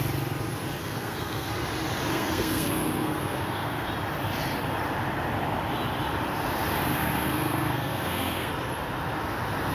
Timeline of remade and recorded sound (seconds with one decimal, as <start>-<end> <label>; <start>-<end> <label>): 0.0-0.8 recorded; 0.8-1.5 remade; 1.5-2.1 recorded; 2.1-3.9 remade; 3.9-6.9 recorded; 6.9-8.5 remade; 8.5-9.7 recorded